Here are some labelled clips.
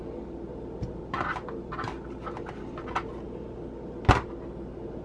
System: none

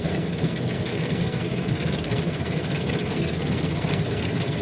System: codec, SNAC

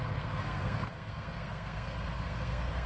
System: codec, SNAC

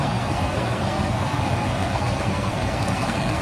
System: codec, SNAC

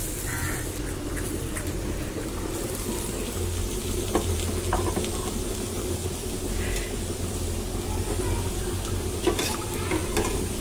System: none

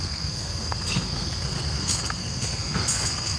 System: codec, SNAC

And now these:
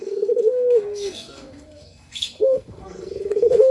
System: codec, SNAC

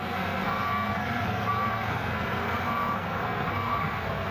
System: codec, SNAC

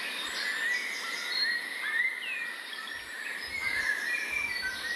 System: none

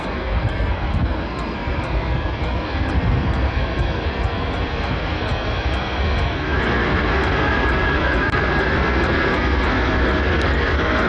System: codec, SNAC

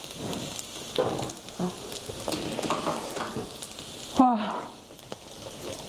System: none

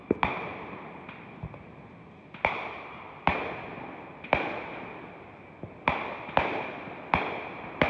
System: none